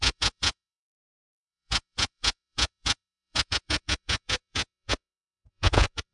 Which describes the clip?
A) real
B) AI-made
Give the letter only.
B